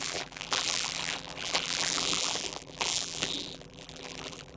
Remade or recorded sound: remade